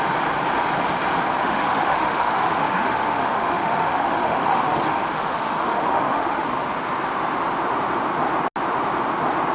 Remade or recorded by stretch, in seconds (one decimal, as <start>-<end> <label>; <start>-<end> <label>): 0.0-1.4 recorded; 1.4-6.4 remade; 6.4-9.5 recorded